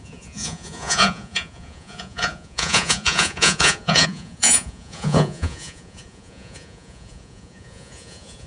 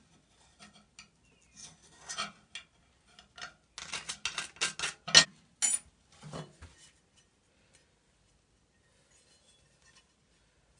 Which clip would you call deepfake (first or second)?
first